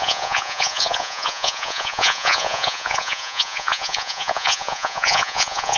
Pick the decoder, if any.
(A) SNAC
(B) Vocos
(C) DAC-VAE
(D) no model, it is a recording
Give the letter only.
B